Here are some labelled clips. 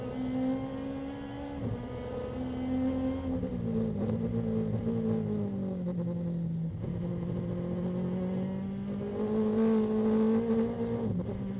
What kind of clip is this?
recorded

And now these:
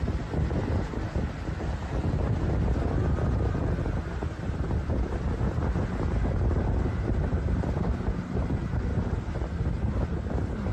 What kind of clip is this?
recorded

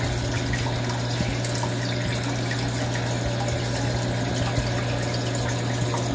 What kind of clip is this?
recorded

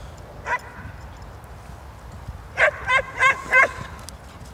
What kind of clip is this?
recorded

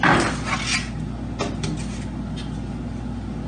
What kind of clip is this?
recorded